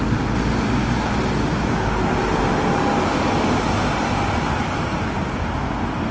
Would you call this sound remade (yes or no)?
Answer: no